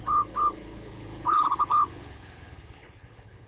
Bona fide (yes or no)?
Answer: no